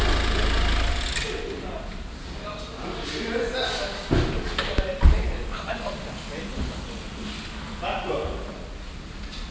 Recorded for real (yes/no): yes